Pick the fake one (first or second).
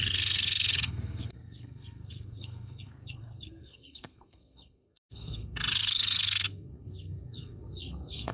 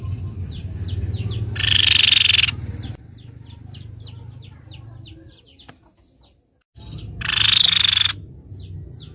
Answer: first